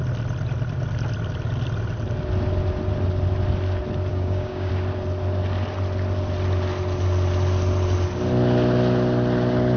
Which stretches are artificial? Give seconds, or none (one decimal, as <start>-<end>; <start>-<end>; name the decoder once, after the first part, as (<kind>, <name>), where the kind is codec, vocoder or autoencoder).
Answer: 4.1-4.7 (codec, DAC)